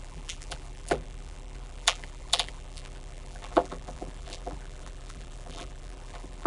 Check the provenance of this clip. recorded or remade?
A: remade